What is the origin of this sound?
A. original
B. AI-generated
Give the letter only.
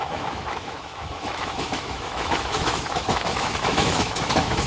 B